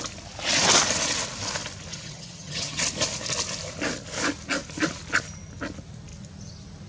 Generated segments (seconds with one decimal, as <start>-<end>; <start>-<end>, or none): 1.9-2.8